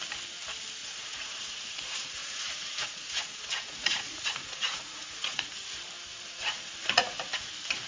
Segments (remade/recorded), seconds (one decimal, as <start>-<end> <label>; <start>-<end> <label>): 0.0-0.8 recorded; 0.8-5.5 remade; 5.5-6.1 recorded; 6.1-7.5 remade; 7.5-7.9 recorded

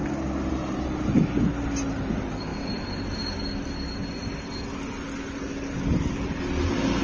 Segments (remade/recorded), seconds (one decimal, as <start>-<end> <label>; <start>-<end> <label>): 0.0-7.0 recorded

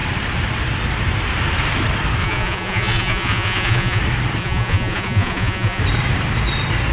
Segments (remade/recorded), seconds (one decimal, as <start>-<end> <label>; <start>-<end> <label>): 0.0-2.2 recorded; 2.2-4.0 remade; 4.0-4.4 recorded; 4.4-5.8 remade; 5.8-6.9 recorded

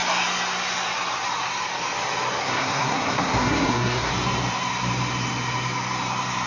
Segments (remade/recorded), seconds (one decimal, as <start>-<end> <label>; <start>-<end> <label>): 0.0-2.4 recorded; 2.4-4.1 remade; 4.1-6.5 recorded